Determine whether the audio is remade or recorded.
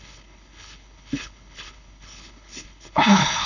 remade